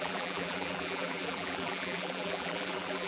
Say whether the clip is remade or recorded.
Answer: remade